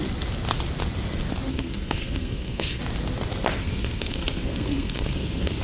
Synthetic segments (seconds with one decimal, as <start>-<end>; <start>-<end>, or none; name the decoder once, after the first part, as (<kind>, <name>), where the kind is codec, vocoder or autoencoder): 1.5-2.8 (codec, SNAC); 3.6-5.6